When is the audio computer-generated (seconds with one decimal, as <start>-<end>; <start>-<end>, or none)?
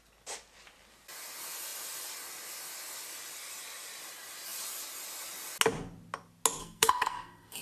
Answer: 6.6-7.6